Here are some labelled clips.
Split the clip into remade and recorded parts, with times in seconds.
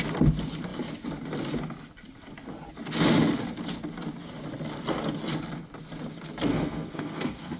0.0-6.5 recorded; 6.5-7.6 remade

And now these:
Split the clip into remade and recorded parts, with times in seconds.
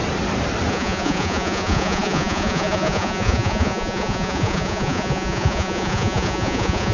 0.0-0.7 recorded; 0.7-6.9 remade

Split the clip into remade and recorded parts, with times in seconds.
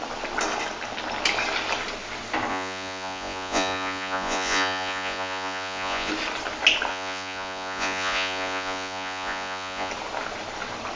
0.0-2.5 recorded; 2.5-6.1 remade; 6.1-6.9 recorded; 6.9-9.9 remade; 9.9-11.0 recorded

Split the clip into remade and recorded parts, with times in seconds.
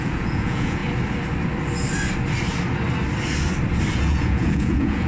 0.0-0.8 remade; 0.8-3.9 recorded; 3.9-5.1 remade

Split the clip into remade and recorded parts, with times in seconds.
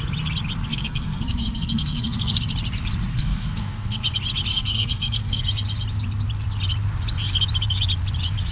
0.0-0.7 recorded; 0.7-2.4 remade; 2.4-3.1 recorded; 3.1-4.0 remade; 4.0-4.5 recorded; 4.5-5.4 remade; 5.4-8.5 recorded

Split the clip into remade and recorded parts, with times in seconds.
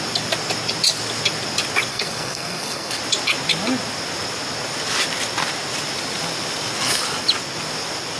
0.0-1.9 recorded; 1.9-3.0 remade; 3.0-8.2 recorded